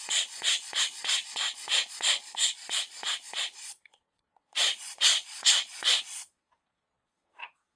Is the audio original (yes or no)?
no